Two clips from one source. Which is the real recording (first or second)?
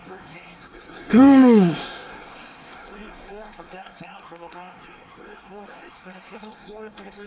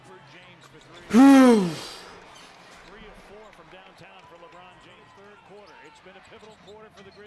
second